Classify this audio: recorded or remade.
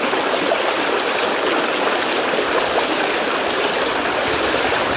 recorded